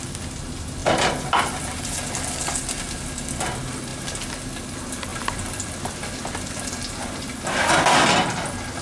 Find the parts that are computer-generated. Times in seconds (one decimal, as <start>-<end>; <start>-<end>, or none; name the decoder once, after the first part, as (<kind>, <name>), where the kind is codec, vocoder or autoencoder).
5.1-7.7 (vocoder, BigVGAN v2)